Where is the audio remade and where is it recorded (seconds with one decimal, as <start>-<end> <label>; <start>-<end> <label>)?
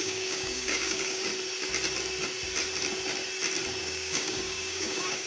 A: 0.0-1.3 remade; 1.3-3.8 recorded; 3.8-5.3 remade